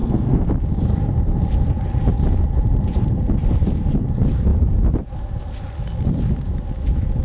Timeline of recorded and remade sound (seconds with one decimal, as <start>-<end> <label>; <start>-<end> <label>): 0.0-0.5 remade; 0.5-7.2 recorded